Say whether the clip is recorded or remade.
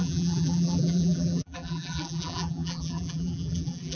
remade